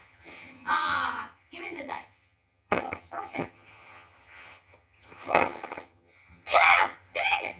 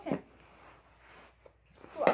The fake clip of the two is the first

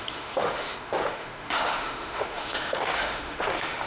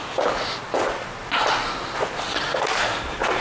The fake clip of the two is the first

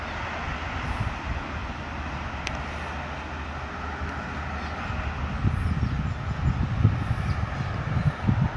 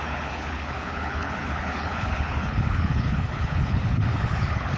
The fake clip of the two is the second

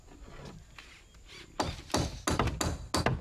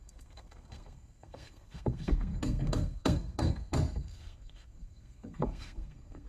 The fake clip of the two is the second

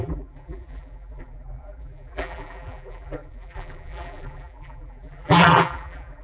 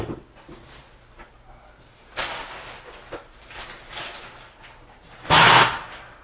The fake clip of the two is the first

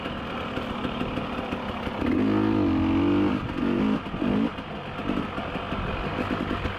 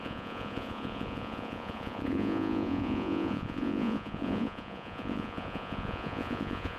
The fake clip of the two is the second